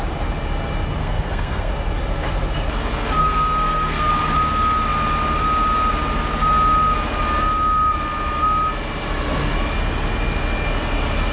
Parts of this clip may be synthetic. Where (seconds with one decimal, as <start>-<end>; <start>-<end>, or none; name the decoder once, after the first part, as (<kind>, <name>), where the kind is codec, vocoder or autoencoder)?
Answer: 1.0-1.7 (codec, SNAC); 3.2-4.1